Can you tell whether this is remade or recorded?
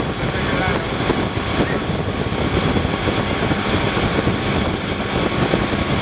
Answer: recorded